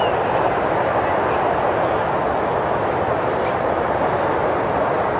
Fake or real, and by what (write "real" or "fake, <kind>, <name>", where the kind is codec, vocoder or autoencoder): real